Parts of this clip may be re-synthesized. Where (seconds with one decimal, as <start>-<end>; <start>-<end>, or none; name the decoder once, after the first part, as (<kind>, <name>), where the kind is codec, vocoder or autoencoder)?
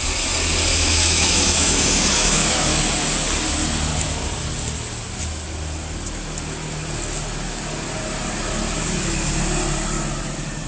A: 0.7-2.8 (autoencoder, DAC-VAE)